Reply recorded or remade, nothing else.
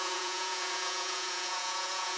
remade